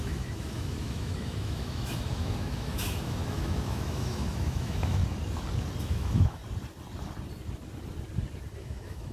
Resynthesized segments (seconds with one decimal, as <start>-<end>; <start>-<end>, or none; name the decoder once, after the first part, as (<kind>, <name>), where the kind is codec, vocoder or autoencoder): 0.0-5.0 (autoencoder, DAC-VAE); 5.8-6.4; 8.6-9.1